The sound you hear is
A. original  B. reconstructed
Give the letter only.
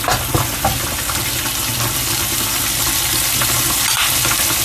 A